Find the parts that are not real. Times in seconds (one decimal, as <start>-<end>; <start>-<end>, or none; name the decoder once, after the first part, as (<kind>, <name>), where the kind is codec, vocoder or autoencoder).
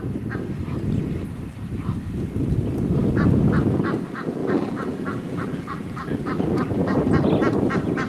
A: 4.4-7.1 (vocoder, BigVGAN v2)